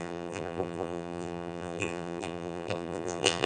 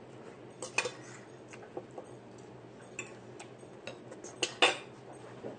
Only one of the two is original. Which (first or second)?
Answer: second